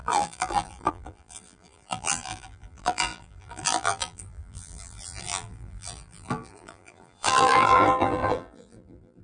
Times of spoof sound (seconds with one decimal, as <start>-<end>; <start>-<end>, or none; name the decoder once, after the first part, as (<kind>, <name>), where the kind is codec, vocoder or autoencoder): 0.0-9.2 (vocoder, BigVGAN v2)